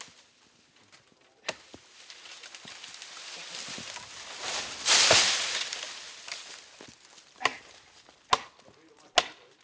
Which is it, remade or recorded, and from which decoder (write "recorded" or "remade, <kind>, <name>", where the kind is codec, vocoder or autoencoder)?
recorded